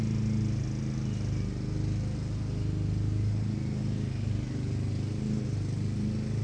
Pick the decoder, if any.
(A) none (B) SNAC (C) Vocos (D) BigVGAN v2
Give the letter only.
A